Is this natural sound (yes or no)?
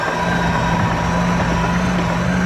yes